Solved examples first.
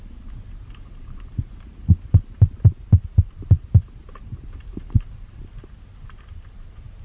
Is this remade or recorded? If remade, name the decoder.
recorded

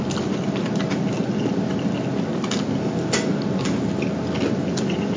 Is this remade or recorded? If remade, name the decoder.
recorded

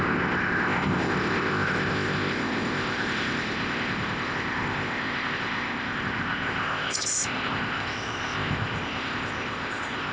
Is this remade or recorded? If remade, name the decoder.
remade, codec, ZipCodec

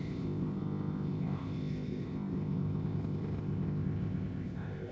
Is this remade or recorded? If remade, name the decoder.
remade, codec, ZipCodec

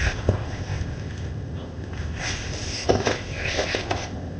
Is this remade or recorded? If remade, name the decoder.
remade, codec, ZipCodec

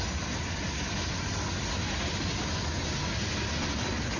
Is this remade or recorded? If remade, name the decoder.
recorded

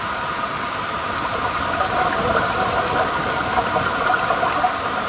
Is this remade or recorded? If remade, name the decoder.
recorded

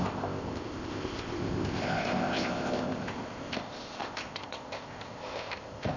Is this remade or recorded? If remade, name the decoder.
remade, codec, ZipCodec